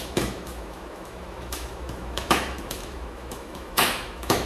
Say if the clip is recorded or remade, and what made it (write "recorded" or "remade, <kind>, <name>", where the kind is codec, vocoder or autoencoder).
remade, autoencoder, DAC-VAE